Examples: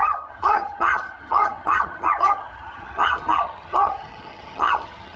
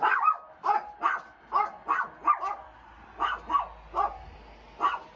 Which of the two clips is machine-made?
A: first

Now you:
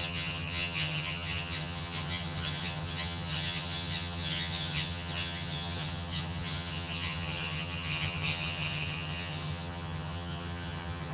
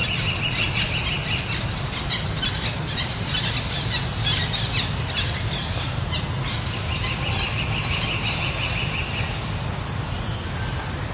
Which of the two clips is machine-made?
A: first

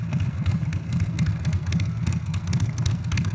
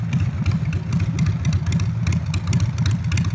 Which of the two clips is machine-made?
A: first